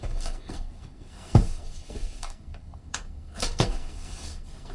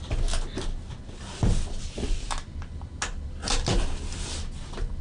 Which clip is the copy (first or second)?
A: first